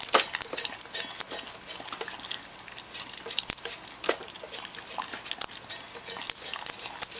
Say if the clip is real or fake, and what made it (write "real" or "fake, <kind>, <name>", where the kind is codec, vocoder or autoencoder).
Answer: real